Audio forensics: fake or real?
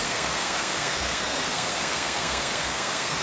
fake